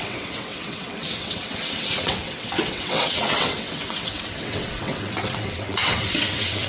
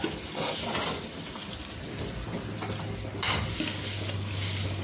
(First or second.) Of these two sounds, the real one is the second